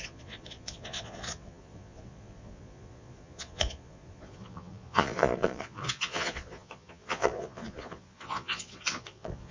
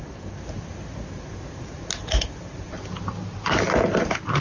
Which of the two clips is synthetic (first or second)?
first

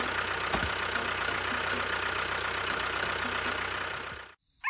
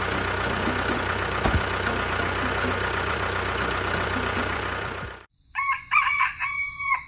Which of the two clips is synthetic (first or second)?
second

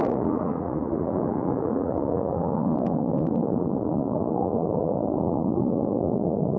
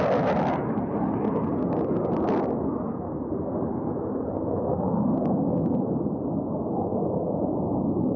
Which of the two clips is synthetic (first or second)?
first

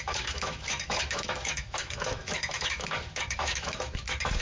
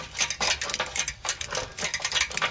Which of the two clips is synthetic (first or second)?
first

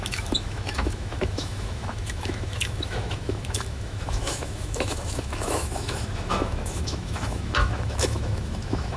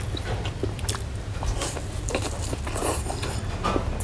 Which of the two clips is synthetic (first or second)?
first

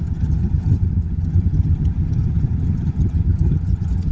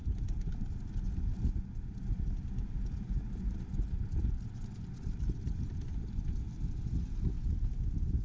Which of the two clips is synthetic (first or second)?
first